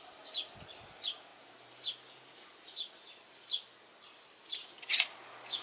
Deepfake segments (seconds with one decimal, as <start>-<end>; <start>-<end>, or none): none